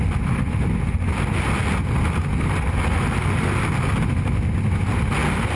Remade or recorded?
recorded